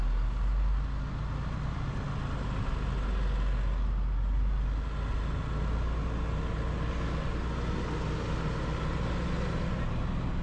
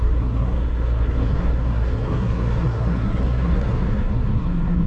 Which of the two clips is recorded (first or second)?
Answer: first